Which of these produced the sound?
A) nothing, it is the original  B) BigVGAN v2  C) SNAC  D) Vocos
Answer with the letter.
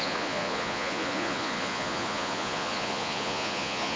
D